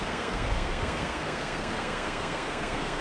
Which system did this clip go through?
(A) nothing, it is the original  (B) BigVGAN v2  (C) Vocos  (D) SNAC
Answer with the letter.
D